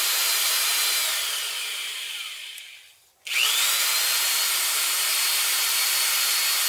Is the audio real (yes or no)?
yes